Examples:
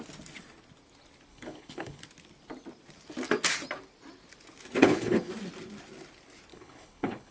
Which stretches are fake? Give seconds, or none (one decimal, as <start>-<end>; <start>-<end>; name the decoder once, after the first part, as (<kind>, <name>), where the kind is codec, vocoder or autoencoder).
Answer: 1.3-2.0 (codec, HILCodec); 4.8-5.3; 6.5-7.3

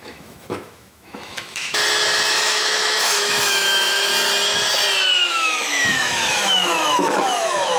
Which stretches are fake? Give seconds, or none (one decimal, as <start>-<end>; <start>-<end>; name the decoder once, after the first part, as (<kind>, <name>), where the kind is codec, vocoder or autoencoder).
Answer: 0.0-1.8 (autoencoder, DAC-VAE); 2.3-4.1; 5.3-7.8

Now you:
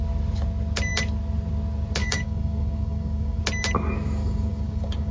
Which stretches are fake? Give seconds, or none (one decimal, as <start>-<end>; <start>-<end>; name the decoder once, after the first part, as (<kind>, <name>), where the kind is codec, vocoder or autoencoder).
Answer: 2.0-3.4 (codec, DAC); 4.2-5.1